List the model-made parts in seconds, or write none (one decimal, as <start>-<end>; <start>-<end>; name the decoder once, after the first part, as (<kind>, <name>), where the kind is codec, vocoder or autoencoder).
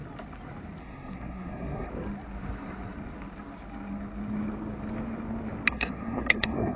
0.8-1.9 (codec, SNAC); 5.7-6.8